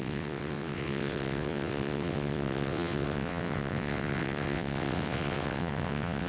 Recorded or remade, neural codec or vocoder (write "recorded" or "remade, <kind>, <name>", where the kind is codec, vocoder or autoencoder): remade, vocoder, WaveNeXt